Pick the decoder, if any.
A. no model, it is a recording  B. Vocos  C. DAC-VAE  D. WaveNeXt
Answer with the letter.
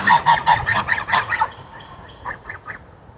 B